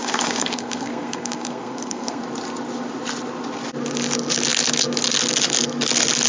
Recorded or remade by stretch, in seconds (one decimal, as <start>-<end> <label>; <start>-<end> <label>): 0.0-2.2 remade; 2.2-6.3 recorded